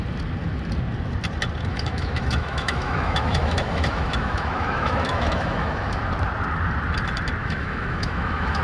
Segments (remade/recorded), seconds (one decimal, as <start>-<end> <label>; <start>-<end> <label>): 0.0-1.7 recorded; 1.7-6.0 remade; 6.0-7.4 recorded; 7.4-8.6 remade